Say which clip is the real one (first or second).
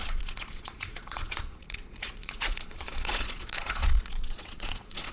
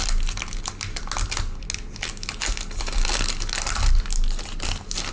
second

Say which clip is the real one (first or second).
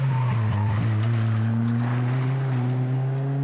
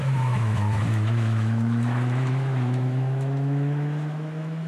first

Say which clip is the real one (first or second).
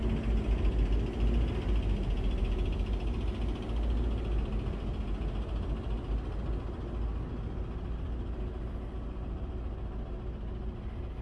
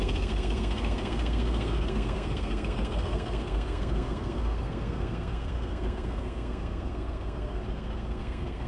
first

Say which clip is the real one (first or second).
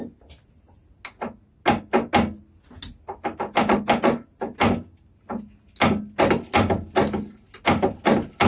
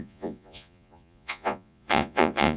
first